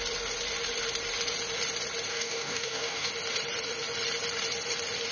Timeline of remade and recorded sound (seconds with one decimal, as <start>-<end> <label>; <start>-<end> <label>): 0.0-2.1 recorded; 2.1-3.1 remade; 3.1-5.1 recorded